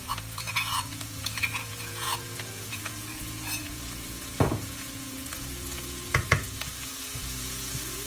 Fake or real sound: fake